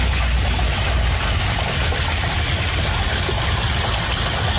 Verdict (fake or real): real